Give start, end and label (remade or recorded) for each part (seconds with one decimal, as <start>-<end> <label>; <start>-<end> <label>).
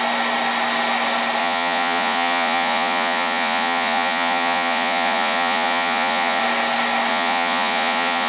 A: 0.0-1.4 recorded; 1.4-6.4 remade; 6.4-7.1 recorded; 7.1-8.3 remade